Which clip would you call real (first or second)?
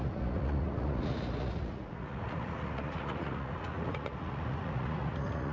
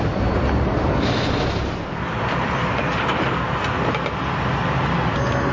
second